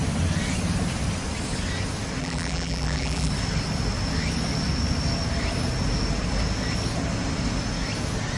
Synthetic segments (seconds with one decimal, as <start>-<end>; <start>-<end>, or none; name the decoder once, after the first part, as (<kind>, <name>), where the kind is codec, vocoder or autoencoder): 2.2-3.3 (vocoder, BigVGAN v2)

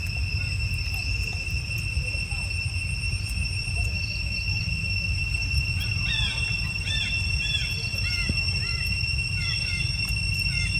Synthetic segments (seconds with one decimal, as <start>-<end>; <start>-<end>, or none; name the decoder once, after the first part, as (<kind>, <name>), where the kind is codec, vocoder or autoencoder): 3.1-7.0 (vocoder, BigVGAN v2)